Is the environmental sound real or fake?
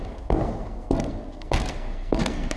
fake